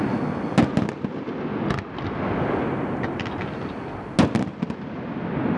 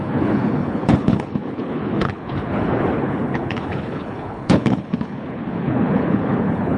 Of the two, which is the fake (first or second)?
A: second